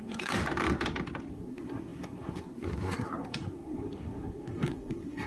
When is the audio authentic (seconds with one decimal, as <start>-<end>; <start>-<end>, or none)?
0.4-1.3